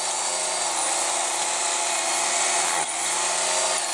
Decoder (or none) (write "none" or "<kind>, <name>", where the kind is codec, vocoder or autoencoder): none